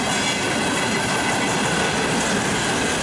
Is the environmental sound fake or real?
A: real